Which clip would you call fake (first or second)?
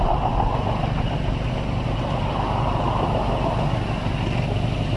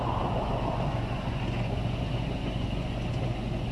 second